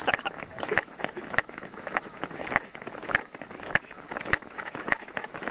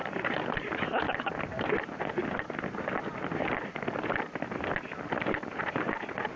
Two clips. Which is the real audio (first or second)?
second